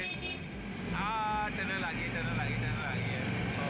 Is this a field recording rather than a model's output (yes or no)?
yes